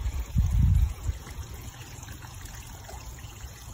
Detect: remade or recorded remade